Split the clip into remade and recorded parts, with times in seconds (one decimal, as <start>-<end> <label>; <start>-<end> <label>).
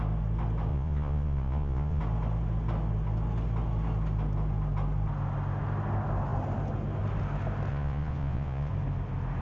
0.0-0.7 recorded; 0.7-2.0 remade; 2.0-7.7 recorded; 7.7-8.7 remade; 8.7-9.4 recorded